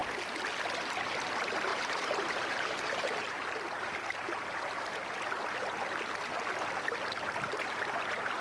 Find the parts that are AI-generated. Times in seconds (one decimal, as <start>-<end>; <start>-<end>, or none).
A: 1.7-3.6